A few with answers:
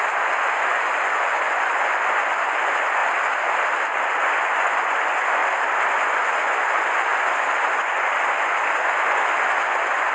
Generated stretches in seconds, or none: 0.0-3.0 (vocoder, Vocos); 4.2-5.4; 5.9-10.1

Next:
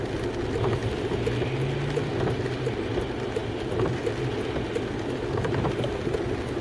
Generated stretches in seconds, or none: none